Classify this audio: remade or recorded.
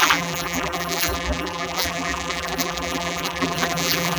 remade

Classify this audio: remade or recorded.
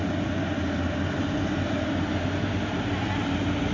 recorded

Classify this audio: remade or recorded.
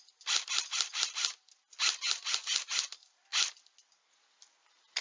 recorded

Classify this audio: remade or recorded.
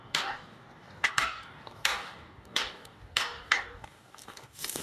remade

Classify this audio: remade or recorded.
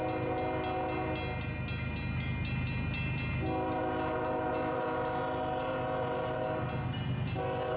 recorded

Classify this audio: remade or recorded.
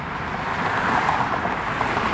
recorded